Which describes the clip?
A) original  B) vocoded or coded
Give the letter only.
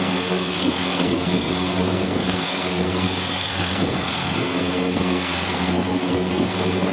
B